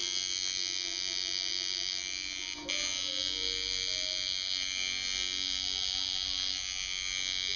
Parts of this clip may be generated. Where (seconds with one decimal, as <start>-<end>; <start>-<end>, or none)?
none